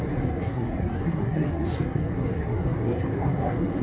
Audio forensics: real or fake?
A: fake